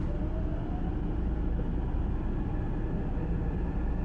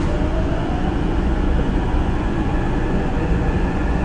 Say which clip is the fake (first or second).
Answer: second